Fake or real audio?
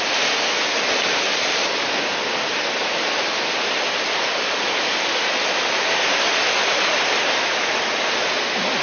real